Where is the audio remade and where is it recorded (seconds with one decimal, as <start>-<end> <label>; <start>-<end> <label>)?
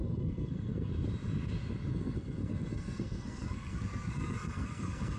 0.0-0.9 remade; 0.9-1.9 recorded; 1.9-5.2 remade